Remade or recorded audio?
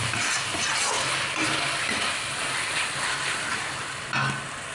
recorded